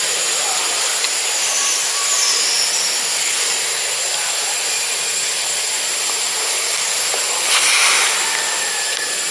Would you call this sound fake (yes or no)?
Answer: no